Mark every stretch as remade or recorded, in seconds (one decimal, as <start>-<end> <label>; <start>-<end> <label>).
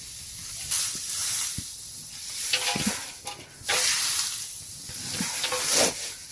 0.0-1.2 recorded; 1.2-1.8 remade; 1.8-6.3 recorded